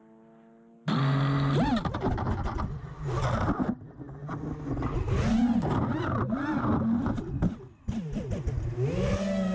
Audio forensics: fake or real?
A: real